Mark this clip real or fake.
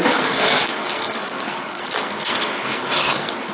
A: fake